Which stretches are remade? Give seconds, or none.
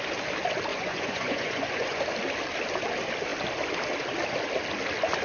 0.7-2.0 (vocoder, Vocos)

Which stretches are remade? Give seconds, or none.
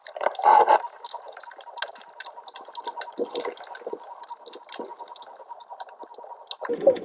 none